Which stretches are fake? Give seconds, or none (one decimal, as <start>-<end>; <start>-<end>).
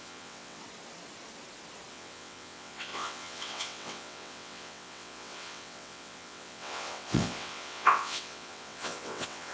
0.0-0.6; 1.9-9.5